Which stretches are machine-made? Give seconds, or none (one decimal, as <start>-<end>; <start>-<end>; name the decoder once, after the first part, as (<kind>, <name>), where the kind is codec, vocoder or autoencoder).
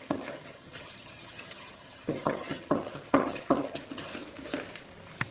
0.0-4.1 (vocoder, HiFi-GAN)